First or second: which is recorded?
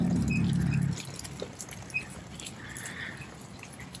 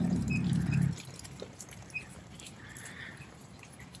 first